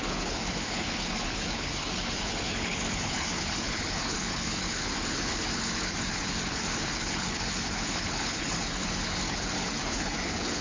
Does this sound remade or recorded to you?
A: remade